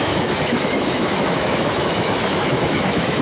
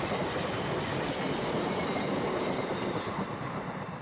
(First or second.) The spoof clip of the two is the first